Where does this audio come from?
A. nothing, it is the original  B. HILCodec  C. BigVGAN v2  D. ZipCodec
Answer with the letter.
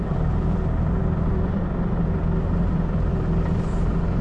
C